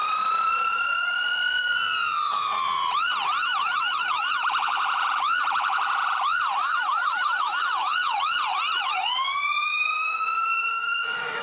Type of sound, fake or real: fake